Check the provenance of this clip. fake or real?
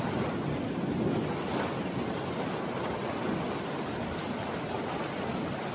real